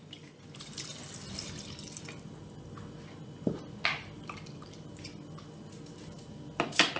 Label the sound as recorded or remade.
recorded